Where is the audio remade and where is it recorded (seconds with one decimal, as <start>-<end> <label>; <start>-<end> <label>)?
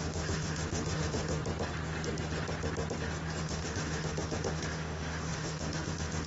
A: 0.0-1.4 remade; 1.4-3.4 recorded; 3.4-6.3 remade